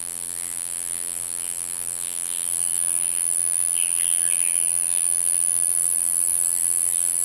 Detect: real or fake fake